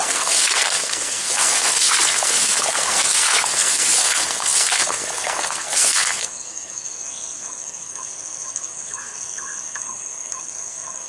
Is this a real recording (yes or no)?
no